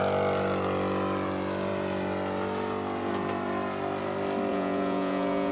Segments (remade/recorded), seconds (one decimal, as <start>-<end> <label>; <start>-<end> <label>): 0.0-4.5 recorded; 4.5-5.5 remade